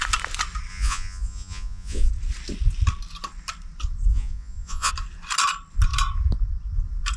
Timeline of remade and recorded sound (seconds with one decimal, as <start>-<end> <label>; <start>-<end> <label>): 0.0-0.7 recorded; 0.7-2.1 remade; 2.1-4.1 recorded; 4.1-4.9 remade; 4.9-7.2 recorded